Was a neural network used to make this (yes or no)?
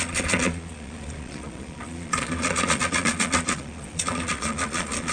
yes